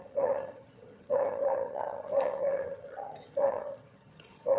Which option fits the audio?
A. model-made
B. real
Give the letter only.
A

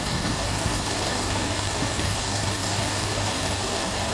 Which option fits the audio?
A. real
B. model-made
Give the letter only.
B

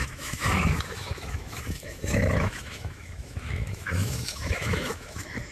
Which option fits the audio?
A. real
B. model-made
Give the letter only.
B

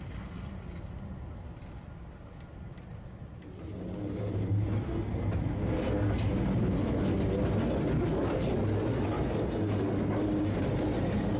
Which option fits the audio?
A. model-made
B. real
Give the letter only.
B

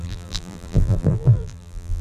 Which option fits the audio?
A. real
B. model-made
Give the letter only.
B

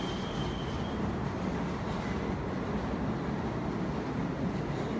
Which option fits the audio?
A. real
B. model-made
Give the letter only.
A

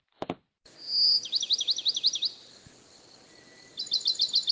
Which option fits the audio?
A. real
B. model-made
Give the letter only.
A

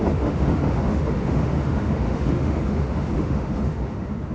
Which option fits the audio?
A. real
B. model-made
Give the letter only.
B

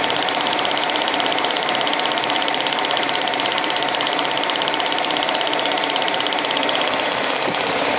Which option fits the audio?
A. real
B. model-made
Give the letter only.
B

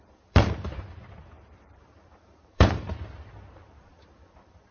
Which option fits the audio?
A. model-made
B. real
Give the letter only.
A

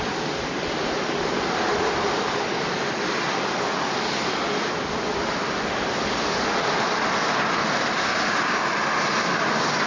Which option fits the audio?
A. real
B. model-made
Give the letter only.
A